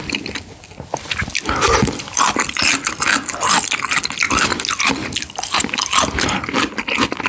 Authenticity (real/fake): real